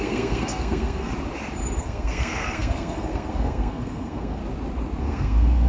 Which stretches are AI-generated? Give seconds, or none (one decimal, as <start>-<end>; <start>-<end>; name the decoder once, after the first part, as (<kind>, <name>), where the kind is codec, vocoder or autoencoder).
0.0-1.1 (codec, SNAC); 1.8-4.4; 5.0-5.7